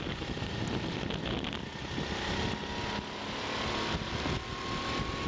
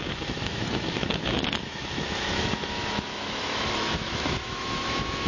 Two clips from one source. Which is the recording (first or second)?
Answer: first